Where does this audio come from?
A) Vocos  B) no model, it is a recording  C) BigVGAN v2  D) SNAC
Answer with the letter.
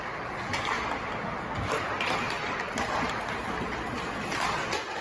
B